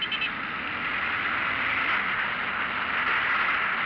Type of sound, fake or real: real